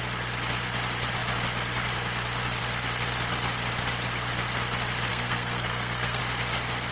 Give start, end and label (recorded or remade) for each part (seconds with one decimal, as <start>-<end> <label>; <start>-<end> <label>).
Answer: 0.0-5.1 recorded; 5.1-6.2 remade; 6.2-6.9 recorded